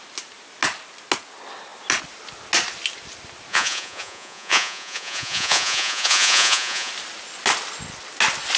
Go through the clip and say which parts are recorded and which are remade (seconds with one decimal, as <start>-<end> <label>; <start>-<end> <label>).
0.0-3.5 recorded; 3.5-6.9 remade; 6.9-8.6 recorded